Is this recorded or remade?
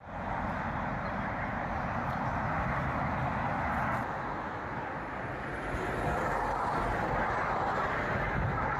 recorded